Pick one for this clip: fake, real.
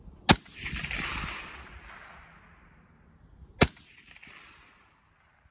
real